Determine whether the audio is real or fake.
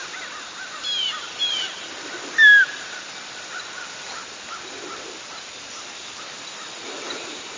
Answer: real